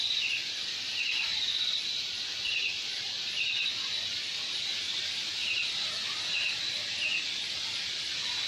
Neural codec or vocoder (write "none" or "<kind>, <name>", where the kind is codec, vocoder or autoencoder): none